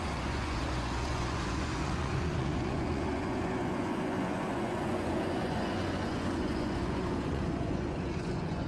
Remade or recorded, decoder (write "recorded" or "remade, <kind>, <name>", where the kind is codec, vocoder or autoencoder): remade, vocoder, Vocos